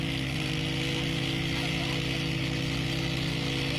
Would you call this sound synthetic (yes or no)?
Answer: no